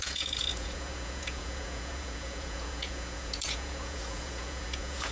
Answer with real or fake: fake